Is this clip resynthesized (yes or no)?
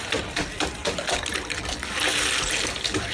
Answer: no